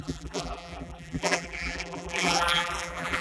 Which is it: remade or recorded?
remade